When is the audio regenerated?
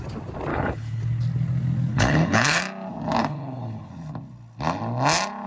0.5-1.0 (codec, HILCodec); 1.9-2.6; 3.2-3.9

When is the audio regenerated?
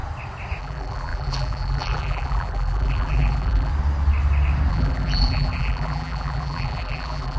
0.6-3.7 (vocoder, BigVGAN v2); 4.7-7.4